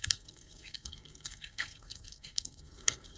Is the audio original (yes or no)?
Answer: no